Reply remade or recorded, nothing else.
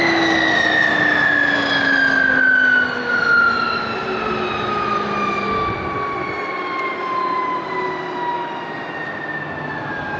recorded